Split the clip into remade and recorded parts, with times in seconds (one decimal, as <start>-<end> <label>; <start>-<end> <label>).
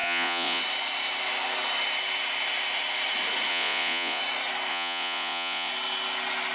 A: 0.0-0.6 remade; 0.6-3.5 recorded; 3.5-4.2 remade; 4.2-4.7 recorded; 4.7-5.7 remade; 5.7-6.5 recorded